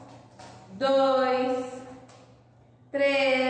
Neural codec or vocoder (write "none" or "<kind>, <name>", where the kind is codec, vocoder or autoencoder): none